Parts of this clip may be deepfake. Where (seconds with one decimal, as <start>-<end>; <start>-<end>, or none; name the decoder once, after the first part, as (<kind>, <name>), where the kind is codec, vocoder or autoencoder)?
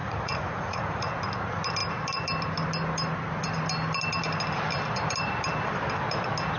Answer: 0.0-1.1 (vocoder, Vocos)